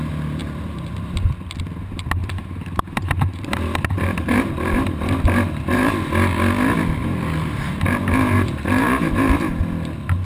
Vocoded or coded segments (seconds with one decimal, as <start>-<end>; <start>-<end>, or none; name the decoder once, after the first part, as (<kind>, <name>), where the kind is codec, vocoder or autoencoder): 2.2-5.9 (vocoder, BigVGAN v2); 7.0-9.5